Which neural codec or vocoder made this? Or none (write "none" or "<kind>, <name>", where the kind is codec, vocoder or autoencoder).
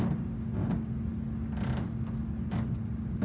none